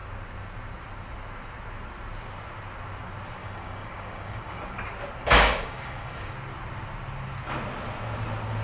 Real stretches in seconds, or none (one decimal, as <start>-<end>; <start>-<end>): 0.0-3.4; 4.6-5.2; 6.3-8.6